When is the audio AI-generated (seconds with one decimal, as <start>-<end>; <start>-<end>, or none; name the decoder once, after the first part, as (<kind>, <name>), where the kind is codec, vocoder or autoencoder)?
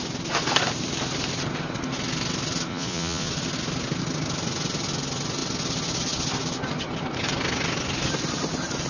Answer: 2.7-3.3 (vocoder, Vocos)